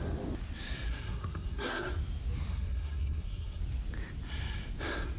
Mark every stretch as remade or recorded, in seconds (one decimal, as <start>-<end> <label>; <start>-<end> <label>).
0.0-0.9 recorded; 0.9-1.9 remade; 1.9-2.5 recorded; 2.5-3.6 remade; 3.6-5.2 recorded